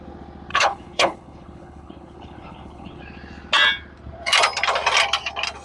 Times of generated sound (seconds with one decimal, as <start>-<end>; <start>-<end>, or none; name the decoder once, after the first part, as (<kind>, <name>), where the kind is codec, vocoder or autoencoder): 0.5-3.0 (codec, HILCodec)